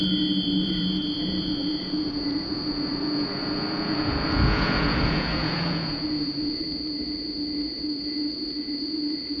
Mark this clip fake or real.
fake